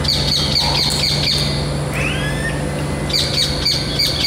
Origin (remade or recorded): recorded